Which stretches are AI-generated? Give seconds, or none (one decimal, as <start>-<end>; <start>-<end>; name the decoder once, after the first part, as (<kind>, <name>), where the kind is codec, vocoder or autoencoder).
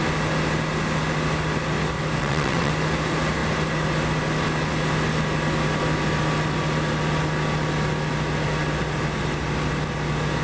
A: 2.2-2.7 (vocoder, WaveNeXt)